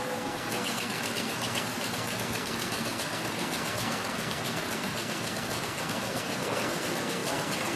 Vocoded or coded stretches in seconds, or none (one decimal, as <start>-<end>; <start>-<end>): 0.0-7.8